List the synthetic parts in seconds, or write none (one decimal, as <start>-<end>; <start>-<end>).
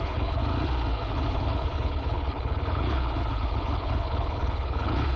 0.0-0.4; 0.9-5.2